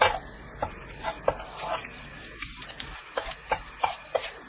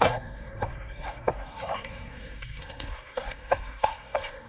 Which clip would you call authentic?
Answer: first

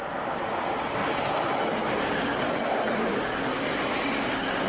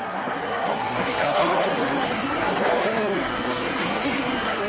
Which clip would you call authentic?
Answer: first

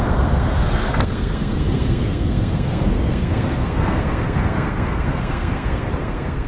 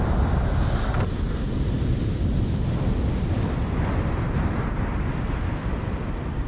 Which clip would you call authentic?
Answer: second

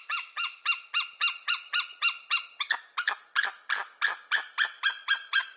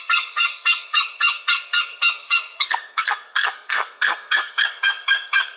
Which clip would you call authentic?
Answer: first